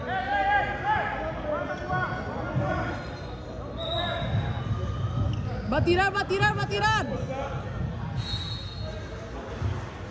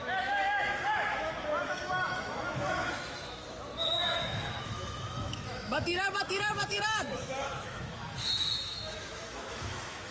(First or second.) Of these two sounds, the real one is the first